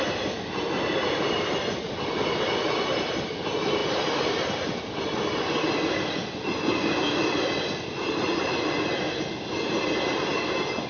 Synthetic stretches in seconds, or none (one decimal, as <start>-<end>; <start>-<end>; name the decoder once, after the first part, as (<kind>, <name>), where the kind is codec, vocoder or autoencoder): none